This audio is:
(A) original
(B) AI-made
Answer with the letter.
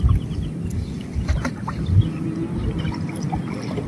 A